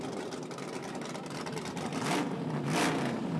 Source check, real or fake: real